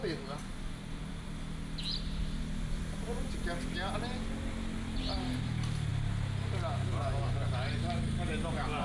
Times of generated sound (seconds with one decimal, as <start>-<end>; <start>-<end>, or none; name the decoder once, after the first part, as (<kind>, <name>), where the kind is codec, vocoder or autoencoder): none